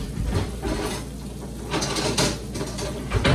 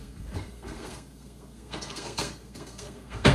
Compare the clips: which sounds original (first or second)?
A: first